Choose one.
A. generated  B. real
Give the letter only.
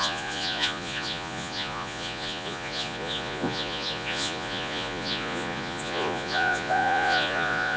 A